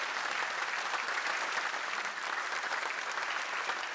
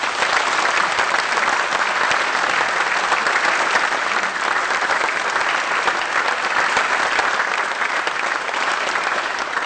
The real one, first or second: second